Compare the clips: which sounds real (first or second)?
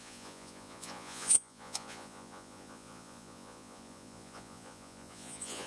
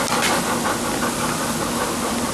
second